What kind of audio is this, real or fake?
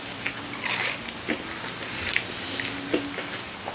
real